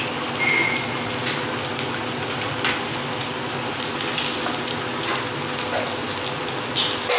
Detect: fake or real real